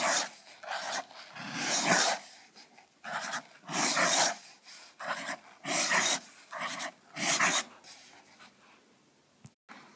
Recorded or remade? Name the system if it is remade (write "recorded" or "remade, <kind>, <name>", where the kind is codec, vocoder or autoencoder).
recorded